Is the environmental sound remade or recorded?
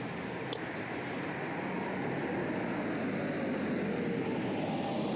recorded